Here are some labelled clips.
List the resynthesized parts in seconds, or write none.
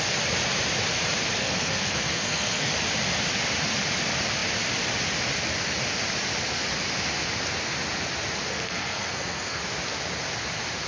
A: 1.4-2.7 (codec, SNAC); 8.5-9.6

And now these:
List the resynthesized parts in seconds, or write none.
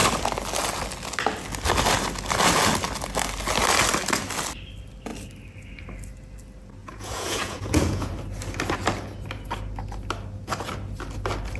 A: 6.8-8.1 (vocoder, Vocos)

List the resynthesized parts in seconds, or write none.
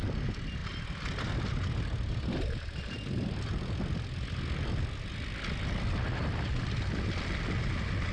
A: none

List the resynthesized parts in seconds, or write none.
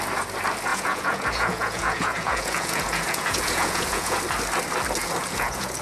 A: 0.7-4.2 (vocoder, Vocos); 5.0-5.8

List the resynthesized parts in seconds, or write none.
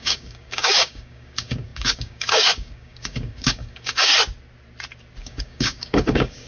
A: 0.0-4.1 (codec, DAC); 5.2-6.5